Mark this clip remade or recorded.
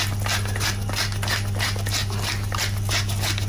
recorded